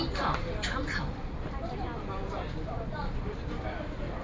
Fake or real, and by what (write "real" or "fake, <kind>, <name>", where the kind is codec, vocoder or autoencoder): fake, vocoder, BigVGAN v2